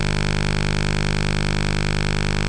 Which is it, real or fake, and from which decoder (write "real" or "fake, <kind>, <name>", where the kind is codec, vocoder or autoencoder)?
real